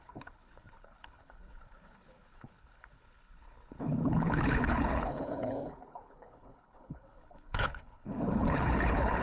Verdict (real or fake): fake